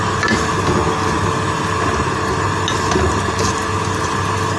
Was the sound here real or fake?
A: real